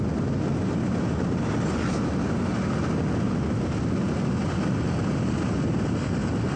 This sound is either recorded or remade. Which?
recorded